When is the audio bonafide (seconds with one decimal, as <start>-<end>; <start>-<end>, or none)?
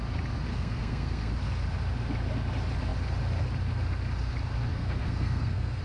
0.0-0.5; 1.3-4.7